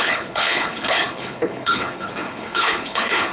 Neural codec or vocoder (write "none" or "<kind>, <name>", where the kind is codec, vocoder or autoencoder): codec, HILCodec